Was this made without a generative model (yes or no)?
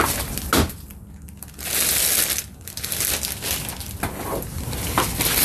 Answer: yes